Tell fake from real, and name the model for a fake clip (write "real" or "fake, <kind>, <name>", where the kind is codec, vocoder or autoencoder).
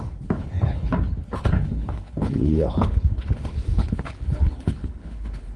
fake, codec, HILCodec